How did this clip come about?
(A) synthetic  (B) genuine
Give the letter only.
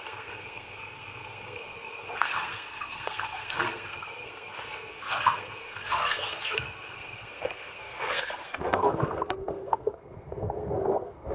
A